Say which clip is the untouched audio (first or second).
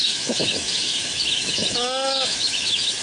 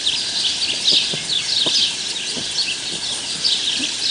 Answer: second